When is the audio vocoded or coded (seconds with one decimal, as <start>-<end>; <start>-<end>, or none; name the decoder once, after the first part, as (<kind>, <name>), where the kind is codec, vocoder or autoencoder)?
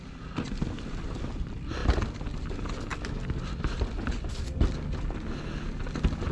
none